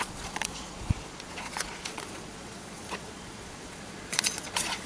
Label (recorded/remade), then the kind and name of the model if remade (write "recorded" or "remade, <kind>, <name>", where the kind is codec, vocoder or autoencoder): remade, vocoder, Vocos